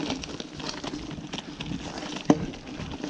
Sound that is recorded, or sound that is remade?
recorded